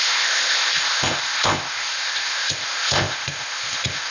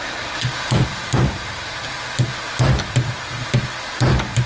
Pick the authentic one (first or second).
second